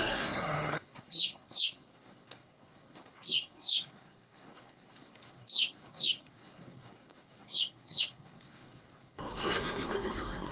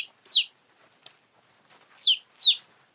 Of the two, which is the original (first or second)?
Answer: second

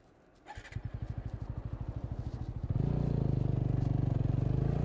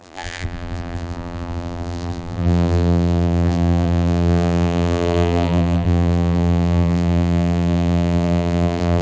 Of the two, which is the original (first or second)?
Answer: first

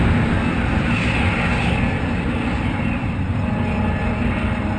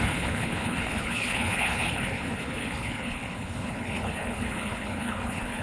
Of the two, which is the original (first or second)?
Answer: first